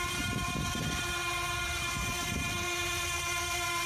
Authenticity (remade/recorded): recorded